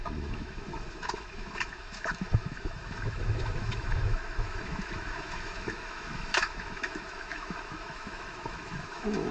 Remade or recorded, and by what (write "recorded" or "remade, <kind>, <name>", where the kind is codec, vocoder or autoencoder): remade, autoencoder, DAC-VAE